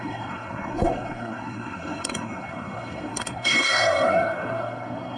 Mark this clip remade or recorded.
remade